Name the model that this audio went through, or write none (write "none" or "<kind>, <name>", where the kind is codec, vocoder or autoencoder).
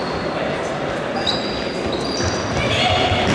none